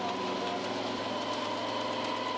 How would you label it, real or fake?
real